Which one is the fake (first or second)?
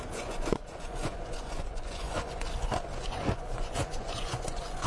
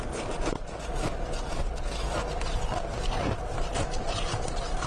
first